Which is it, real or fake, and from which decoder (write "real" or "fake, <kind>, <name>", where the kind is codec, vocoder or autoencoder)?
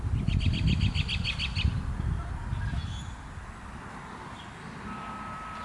real